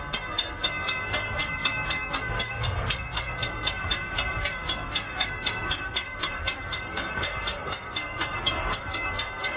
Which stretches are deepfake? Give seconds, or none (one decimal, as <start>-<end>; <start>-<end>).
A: 0.0-9.6